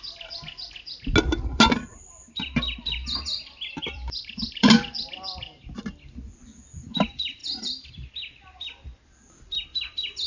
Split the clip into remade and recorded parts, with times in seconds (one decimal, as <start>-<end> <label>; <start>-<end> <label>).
0.0-1.9 recorded; 1.9-5.8 remade; 5.8-7.4 recorded; 7.4-7.9 remade; 7.9-10.3 recorded